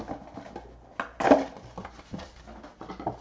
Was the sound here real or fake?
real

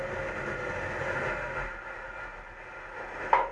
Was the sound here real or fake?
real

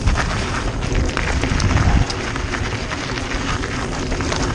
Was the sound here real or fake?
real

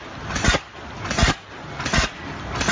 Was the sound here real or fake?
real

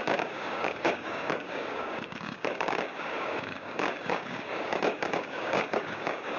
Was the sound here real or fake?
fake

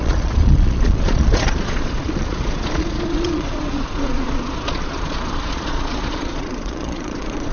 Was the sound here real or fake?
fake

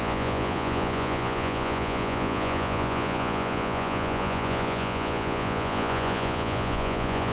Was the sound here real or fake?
fake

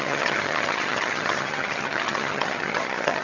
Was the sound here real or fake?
fake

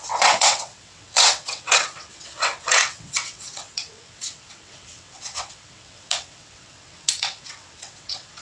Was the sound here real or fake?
fake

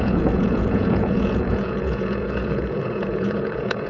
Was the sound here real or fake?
fake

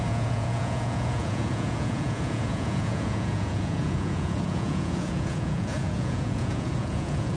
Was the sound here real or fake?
fake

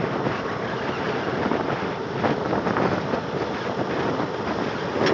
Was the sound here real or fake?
real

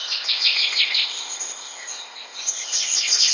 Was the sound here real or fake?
fake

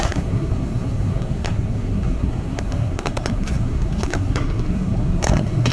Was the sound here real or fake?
fake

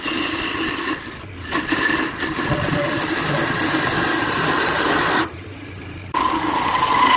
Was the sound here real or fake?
real